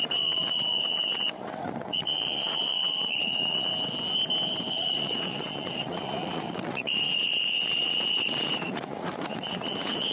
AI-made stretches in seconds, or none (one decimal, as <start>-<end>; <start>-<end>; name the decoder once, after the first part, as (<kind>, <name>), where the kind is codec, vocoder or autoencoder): 0.0-3.7 (vocoder, Vocos); 4.7-10.1